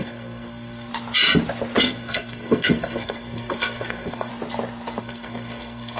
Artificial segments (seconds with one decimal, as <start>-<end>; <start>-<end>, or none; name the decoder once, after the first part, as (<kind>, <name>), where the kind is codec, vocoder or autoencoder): 0.0-0.9 (codec, SNAC); 1.8-4.3; 5.0-6.0